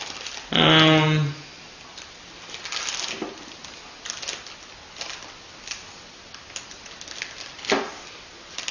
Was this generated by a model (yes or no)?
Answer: no